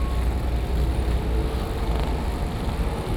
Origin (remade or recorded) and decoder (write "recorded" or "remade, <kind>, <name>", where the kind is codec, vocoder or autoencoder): recorded